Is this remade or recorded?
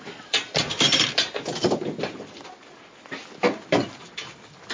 remade